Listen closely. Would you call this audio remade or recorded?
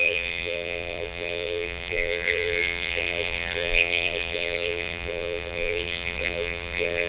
remade